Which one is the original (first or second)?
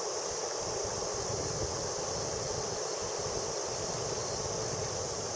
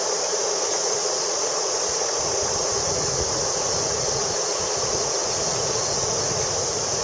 first